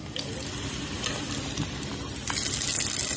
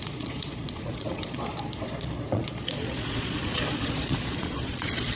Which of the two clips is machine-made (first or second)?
second